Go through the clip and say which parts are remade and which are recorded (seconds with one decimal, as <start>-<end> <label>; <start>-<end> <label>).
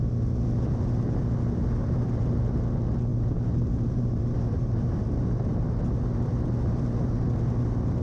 0.0-1.8 recorded; 1.8-2.6 remade; 2.6-3.1 recorded; 3.1-5.1 remade; 5.1-8.0 recorded